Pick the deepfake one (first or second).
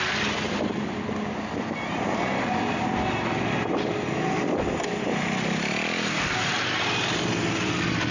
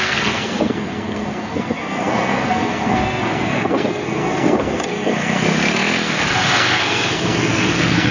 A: second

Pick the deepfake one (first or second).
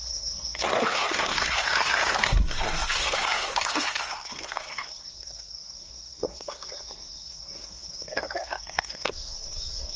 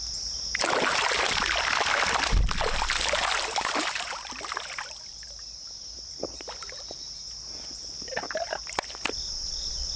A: first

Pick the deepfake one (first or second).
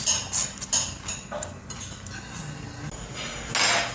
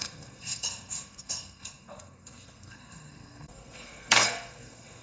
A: second